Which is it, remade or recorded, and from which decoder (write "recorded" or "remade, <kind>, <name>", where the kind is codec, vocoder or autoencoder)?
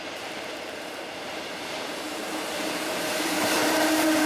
remade, vocoder, BigVGAN v2